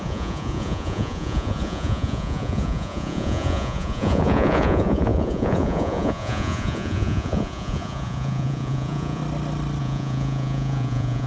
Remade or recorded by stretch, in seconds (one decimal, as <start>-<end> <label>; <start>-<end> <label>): 0.0-9.2 remade; 9.2-9.8 recorded; 9.8-11.3 remade